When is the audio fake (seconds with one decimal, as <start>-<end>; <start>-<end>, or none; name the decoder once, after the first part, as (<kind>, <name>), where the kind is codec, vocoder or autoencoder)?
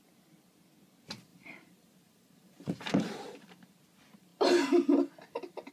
1.3-3.7 (vocoder, BigVGAN v2)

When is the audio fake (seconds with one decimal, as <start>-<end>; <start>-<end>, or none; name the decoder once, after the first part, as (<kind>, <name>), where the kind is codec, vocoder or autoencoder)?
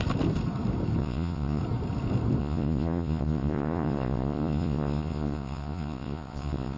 1.0-1.6 (vocoder, Vocos); 2.4-6.8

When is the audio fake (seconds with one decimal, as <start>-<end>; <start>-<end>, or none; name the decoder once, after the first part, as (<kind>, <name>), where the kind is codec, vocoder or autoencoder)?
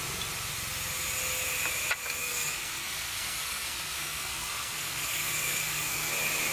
2.2-6.1 (codec, SNAC)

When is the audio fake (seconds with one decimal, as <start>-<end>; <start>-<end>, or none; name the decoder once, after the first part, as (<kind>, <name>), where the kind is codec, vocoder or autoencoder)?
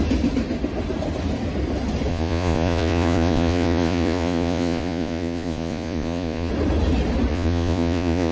2.1-6.5 (vocoder, Vocos); 7.3-8.3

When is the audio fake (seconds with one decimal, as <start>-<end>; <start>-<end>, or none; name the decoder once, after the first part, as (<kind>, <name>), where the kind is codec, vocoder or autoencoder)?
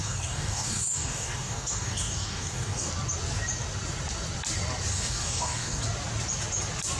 0.0-2.9 (codec, DAC); 4.9-5.8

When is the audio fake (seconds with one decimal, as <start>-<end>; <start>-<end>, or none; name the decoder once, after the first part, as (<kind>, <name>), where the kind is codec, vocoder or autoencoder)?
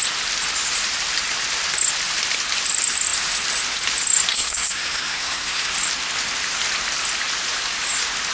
4.3-5.7 (codec, SNAC)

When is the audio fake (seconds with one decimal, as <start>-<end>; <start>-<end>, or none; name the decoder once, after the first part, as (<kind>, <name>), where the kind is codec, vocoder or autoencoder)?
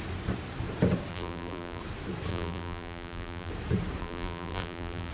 1.1-1.8 (vocoder, BigVGAN v2); 2.3-3.5; 4.0-5.1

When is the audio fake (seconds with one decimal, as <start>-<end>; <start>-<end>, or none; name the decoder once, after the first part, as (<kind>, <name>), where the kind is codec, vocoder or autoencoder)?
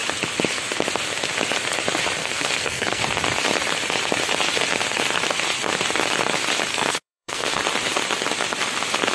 2.2-3.0 (codec, SNAC); 6.7-7.6